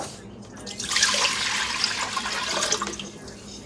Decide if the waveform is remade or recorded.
recorded